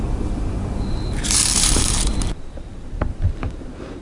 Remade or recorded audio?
remade